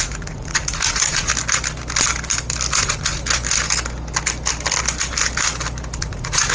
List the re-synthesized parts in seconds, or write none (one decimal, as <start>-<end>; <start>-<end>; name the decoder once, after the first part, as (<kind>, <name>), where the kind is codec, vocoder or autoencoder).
0.0-1.3 (vocoder, Vocos); 2.7-3.2; 6.0-6.5